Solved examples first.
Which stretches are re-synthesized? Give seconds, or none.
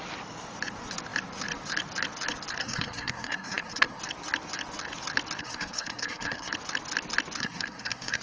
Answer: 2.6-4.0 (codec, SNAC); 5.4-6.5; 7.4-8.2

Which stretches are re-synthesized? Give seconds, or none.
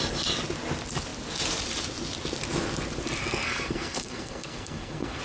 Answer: 3.2-5.2 (codec, SNAC)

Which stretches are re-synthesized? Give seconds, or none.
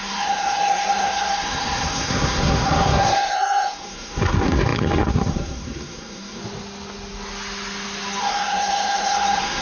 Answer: 0.0-6.4 (codec, SNAC); 8.2-9.6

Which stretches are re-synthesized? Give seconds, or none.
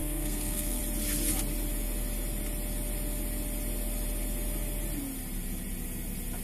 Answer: 0.0-0.8 (codec, SNAC)